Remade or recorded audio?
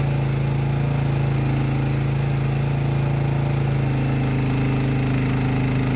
recorded